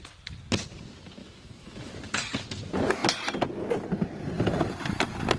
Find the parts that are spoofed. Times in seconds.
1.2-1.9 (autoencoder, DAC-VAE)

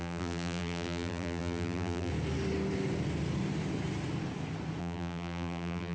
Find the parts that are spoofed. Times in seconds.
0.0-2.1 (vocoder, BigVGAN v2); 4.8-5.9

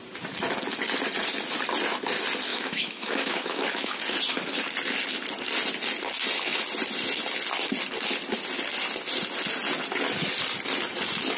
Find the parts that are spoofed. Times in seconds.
2.5-4.0 (autoencoder, DAC-VAE)

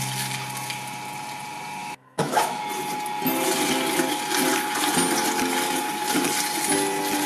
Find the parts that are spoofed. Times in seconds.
1.8-2.6 (autoencoder, DAC-VAE)

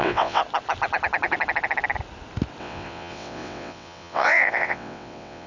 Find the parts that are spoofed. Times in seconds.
0.0-0.4 (vocoder, WaveNeXt); 2.6-5.5

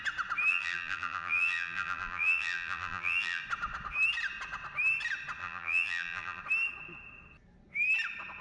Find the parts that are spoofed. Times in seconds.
0.5-3.4 (vocoder, BigVGAN v2); 5.4-6.4